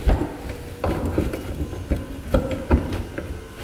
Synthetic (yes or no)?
no